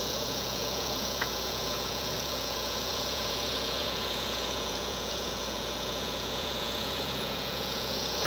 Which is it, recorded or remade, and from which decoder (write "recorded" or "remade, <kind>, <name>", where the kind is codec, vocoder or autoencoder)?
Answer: remade, vocoder, Vocos